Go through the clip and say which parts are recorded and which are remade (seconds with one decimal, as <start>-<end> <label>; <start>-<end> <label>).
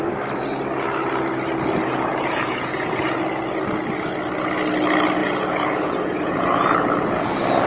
0.0-1.8 recorded; 1.8-3.2 remade; 3.2-5.2 recorded; 5.2-6.7 remade; 6.7-7.7 recorded